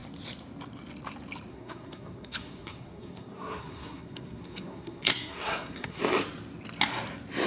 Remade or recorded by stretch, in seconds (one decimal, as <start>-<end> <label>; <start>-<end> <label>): 0.0-1.5 recorded; 1.5-6.0 remade; 6.0-7.5 recorded